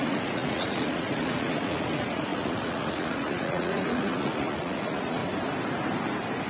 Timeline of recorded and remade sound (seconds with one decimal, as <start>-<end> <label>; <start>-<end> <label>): 0.0-5.2 remade; 5.2-6.5 recorded